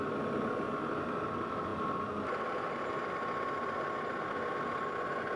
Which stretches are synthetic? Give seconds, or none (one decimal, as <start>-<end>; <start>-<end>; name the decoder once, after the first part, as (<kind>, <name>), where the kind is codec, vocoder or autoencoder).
none